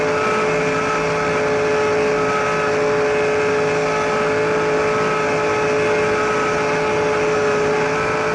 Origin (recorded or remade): recorded